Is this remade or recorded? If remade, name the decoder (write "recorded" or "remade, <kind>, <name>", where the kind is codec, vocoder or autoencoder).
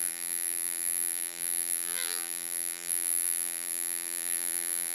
remade, vocoder, BigVGAN v2